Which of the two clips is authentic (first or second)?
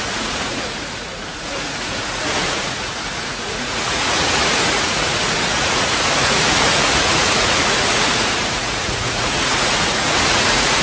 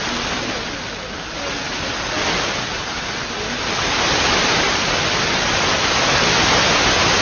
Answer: second